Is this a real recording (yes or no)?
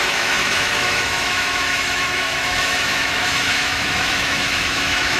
no